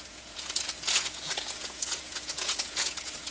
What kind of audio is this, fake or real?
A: fake